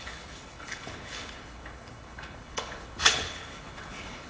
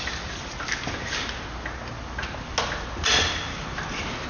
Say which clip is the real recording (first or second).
second